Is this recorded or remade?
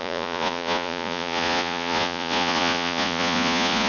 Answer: remade